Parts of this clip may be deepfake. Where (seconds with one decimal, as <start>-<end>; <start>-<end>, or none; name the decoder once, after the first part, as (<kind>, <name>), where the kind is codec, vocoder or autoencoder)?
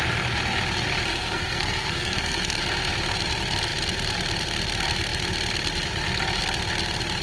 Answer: 1.1-2.6 (codec, SNAC)